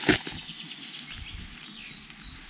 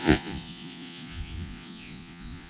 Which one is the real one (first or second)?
first